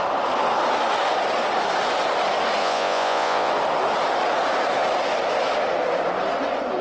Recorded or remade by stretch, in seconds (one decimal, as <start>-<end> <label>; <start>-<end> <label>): 0.0-2.6 recorded; 2.6-3.5 remade; 3.5-6.8 recorded